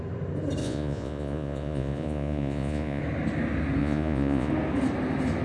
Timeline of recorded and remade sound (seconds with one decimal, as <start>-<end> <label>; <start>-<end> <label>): 0.0-0.6 recorded; 0.6-3.0 remade; 3.0-3.8 recorded; 3.8-4.5 remade; 4.5-5.4 recorded